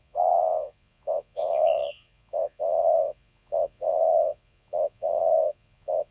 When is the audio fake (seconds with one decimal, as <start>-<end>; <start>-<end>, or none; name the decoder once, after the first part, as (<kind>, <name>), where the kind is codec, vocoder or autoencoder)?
0.0-6.1 (vocoder, Vocos)